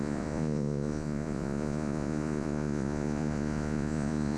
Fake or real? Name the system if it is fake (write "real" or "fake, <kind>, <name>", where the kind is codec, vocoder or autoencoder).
fake, vocoder, Vocos